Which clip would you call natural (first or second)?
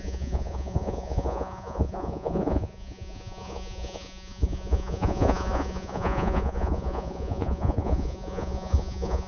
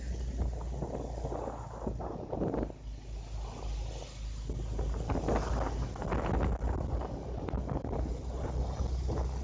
second